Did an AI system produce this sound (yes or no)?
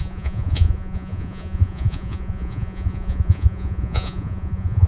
yes